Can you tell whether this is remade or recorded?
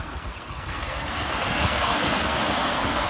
remade